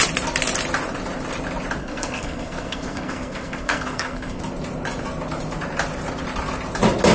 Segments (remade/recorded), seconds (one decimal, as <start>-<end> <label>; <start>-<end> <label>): 0.0-1.8 recorded; 1.8-4.4 remade; 4.4-7.1 recorded